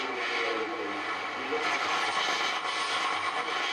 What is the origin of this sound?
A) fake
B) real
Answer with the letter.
B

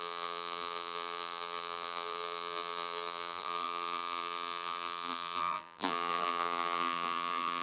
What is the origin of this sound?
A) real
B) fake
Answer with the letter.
B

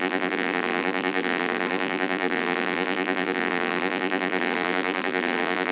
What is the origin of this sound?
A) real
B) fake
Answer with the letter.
B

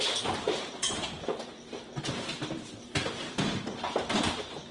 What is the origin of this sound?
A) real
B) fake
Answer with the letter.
B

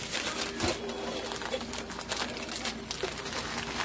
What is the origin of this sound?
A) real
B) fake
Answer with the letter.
A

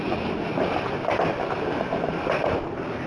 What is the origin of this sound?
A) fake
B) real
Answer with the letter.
A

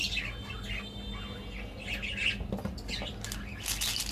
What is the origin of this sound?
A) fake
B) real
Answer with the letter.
B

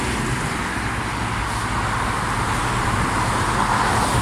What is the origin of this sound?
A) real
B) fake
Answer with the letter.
A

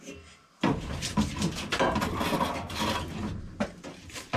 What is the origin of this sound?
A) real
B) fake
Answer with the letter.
A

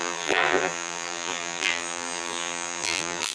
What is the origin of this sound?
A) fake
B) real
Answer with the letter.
A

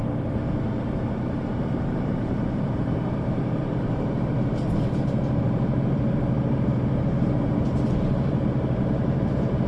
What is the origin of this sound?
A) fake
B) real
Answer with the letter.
A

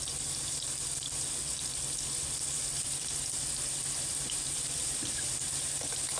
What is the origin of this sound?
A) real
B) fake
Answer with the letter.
B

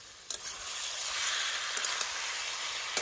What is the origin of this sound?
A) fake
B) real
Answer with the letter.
B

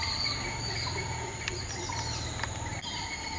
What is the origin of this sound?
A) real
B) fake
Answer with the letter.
A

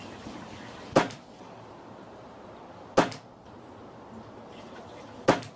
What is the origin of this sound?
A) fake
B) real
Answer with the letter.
B